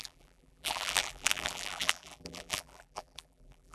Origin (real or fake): fake